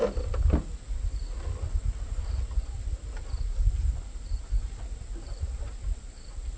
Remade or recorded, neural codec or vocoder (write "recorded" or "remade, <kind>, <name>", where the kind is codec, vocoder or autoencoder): recorded